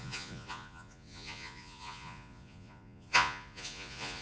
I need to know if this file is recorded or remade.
remade